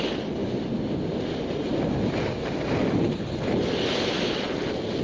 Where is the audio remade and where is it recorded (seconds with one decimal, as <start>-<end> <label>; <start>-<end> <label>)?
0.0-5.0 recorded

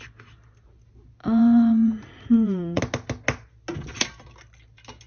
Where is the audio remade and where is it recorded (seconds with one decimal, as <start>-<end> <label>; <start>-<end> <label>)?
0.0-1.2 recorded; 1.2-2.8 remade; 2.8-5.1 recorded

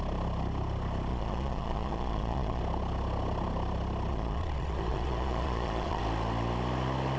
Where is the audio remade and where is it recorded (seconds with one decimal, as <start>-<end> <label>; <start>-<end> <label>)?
0.0-1.1 recorded; 1.1-2.6 remade; 2.6-4.1 recorded; 4.1-6.0 remade; 6.0-7.2 recorded

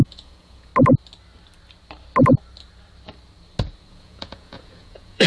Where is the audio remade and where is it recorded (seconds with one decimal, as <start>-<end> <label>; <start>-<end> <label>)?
0.0-0.7 remade; 0.7-3.9 recorded; 3.9-5.3 remade

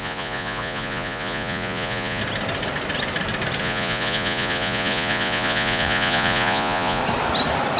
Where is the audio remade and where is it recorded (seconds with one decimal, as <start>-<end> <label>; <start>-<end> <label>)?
0.0-2.2 remade; 2.2-3.6 recorded; 3.6-7.0 remade; 7.0-7.8 recorded

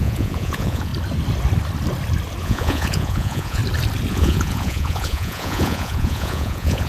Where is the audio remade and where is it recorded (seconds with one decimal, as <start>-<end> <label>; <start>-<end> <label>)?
0.0-0.9 remade; 0.9-2.4 recorded; 2.4-3.6 remade; 3.6-4.1 recorded; 4.1-6.9 remade

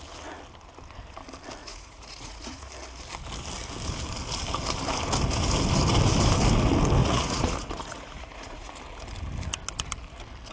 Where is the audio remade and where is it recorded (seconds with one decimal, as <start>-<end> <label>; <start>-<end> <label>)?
0.0-1.6 recorded; 1.6-2.7 remade; 2.7-7.0 recorded; 7.0-8.7 remade; 8.7-10.5 recorded